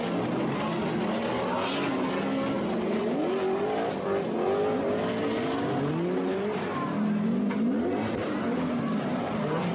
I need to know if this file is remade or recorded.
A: recorded